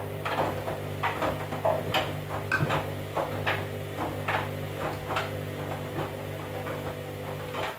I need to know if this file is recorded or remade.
recorded